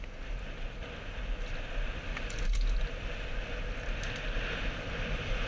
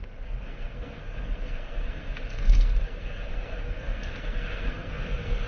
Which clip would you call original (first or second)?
first